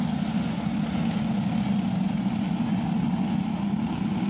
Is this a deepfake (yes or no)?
no